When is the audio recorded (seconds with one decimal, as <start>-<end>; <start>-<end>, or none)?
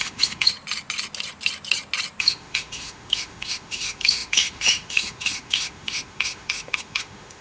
0.5-2.2